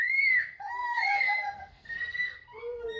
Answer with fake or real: fake